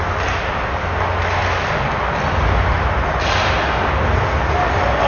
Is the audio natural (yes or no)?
yes